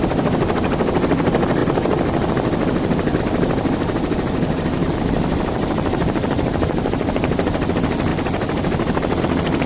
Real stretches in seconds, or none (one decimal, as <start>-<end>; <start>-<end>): 0.0-1.6; 3.2-4.8; 7.7-8.1; 9.2-9.7